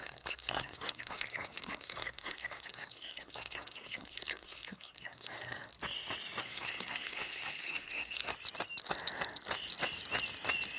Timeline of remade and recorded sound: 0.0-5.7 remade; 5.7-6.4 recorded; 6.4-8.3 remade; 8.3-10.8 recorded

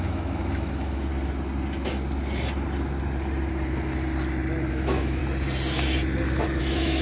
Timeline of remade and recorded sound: 0.0-1.1 remade; 1.1-4.7 recorded; 4.7-5.2 remade; 5.2-6.6 recorded; 6.6-7.0 remade

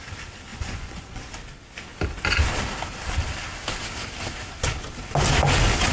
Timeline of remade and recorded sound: 0.0-0.5 recorded; 0.5-1.3 remade; 1.3-5.9 recorded

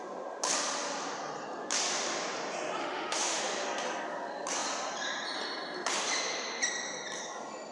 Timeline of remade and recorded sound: 0.0-2.8 recorded; 2.8-3.4 remade; 3.4-7.7 recorded

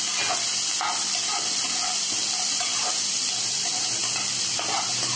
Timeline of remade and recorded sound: 0.0-5.2 recorded

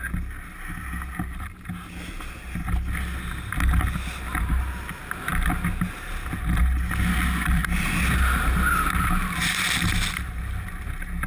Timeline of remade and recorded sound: 0.0-11.3 recorded